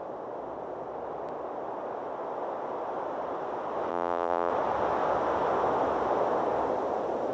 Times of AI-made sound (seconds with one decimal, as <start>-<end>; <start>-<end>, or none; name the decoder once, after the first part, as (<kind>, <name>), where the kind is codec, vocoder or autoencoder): 3.9-4.5 (vocoder, BigVGAN v2)